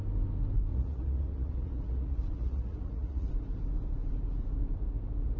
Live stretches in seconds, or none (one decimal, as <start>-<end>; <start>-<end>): 0.0-0.7; 3.3-5.4